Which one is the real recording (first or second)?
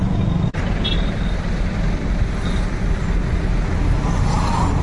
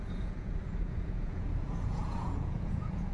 first